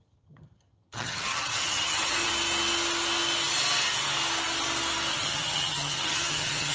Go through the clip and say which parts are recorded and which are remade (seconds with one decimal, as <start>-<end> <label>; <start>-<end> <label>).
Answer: 0.0-2.3 remade; 2.3-5.1 recorded; 5.1-6.7 remade

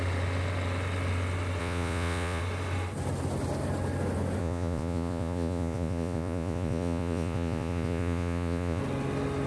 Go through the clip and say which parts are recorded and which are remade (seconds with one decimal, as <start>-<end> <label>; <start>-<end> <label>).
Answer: 0.0-1.6 recorded; 1.6-2.4 remade; 2.4-4.4 recorded; 4.4-8.8 remade; 8.8-9.5 recorded

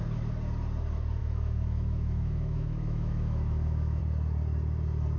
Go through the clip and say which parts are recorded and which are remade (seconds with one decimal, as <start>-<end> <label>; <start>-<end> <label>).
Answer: 0.0-1.2 recorded; 1.2-4.0 remade; 4.0-5.2 recorded

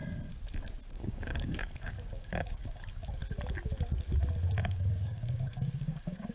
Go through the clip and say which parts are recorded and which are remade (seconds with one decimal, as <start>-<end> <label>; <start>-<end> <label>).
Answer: 0.0-0.9 recorded; 0.9-3.2 remade; 3.2-4.6 recorded; 4.6-6.3 remade

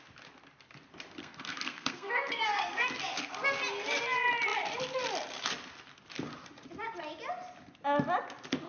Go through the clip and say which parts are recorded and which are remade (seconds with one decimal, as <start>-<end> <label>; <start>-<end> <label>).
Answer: 0.0-1.2 recorded; 1.2-2.9 remade; 2.9-8.7 recorded